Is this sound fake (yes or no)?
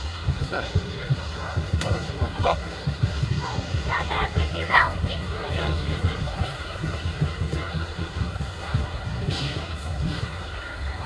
yes